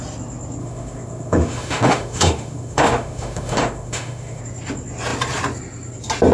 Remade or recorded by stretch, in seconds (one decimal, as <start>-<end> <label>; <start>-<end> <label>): 0.0-0.6 recorded; 0.6-4.4 remade; 4.4-6.3 recorded